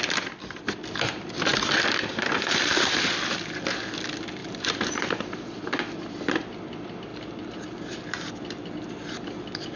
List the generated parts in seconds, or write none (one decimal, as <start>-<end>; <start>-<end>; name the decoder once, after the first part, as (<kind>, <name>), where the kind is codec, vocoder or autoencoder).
4.4-5.2 (vocoder, BigVGAN v2); 7.1-8.3